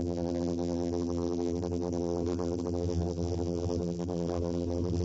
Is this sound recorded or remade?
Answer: remade